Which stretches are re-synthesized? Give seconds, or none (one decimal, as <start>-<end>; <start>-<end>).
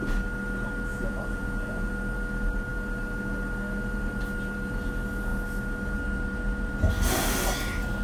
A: 0.9-1.9